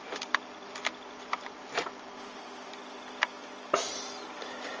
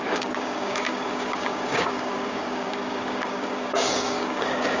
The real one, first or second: first